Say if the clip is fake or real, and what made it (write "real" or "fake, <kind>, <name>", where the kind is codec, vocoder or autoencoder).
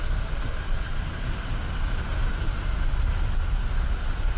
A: real